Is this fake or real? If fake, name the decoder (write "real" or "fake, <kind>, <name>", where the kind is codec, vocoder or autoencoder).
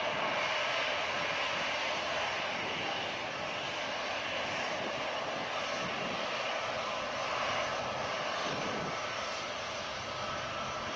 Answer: real